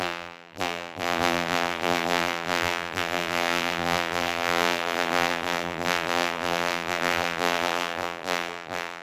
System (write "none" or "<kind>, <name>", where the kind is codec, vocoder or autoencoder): vocoder, BigVGAN v2